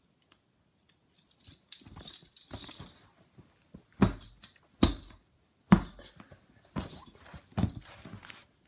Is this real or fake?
real